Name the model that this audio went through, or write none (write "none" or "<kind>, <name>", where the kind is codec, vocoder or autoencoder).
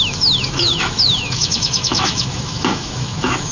autoencoder, DAC-VAE